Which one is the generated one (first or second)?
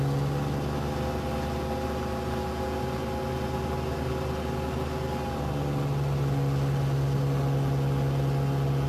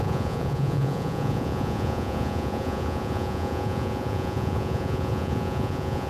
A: second